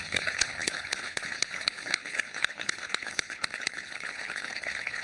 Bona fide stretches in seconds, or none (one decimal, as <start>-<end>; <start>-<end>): none